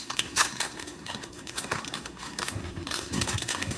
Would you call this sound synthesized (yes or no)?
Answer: yes